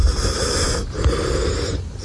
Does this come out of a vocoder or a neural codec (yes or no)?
no